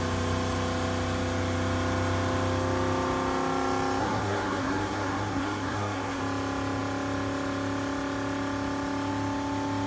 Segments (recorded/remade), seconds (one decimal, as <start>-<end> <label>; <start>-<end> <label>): 0.0-4.0 recorded; 4.0-6.2 remade; 6.2-9.9 recorded